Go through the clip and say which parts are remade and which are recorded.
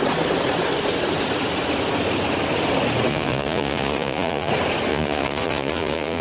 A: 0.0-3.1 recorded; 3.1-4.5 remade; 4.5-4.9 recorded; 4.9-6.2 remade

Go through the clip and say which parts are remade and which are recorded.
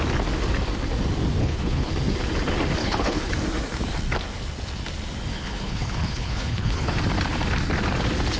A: 0.0-1.4 recorded; 1.4-1.9 remade; 1.9-2.8 recorded; 2.8-3.3 remade; 3.3-5.3 recorded; 5.3-7.0 remade; 7.0-8.4 recorded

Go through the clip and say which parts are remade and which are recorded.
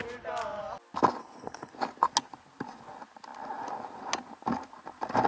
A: 0.0-1.2 recorded; 1.2-1.7 remade; 1.7-5.3 recorded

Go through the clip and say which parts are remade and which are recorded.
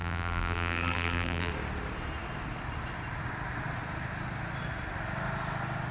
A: 0.0-1.5 remade; 1.5-5.9 recorded